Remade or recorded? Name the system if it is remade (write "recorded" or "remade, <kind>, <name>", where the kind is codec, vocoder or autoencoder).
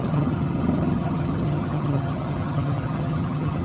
remade, vocoder, HiFi-GAN